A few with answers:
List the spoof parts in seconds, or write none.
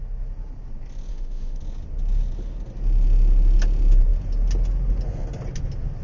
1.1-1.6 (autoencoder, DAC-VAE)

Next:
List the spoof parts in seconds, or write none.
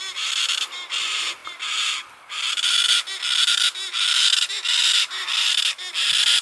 none